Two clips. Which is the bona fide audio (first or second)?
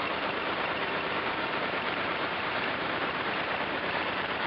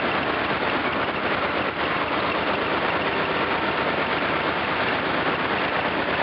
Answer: second